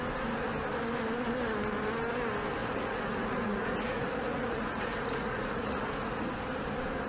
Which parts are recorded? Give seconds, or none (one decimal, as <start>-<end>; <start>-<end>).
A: 0.0-2.6; 6.3-7.1

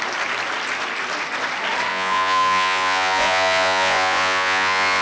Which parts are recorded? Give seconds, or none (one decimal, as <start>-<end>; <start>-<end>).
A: 0.0-1.9

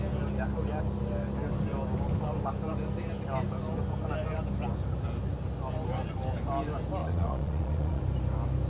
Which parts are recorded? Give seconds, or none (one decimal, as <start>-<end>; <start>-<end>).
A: 0.0-7.0; 8.0-8.7

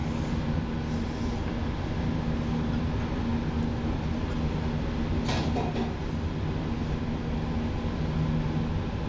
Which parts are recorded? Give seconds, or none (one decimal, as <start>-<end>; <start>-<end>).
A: 0.0-9.1

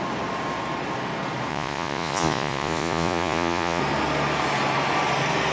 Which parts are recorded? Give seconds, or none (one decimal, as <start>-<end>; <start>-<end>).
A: 0.0-1.5; 3.8-5.5

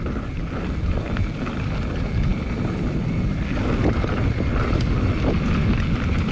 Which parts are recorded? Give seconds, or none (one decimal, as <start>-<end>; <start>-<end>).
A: 0.0-6.3

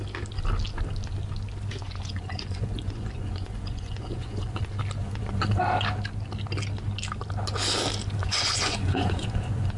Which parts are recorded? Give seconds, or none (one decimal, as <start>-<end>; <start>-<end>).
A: 0.0-1.8; 4.6-5.0; 5.6-8.2

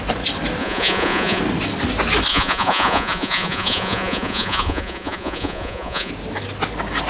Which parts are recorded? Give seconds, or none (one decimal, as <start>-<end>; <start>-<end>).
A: 0.0-0.6; 1.4-2.3; 6.1-7.1